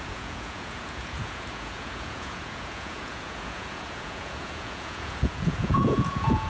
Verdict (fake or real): fake